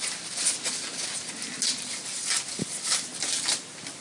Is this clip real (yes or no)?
yes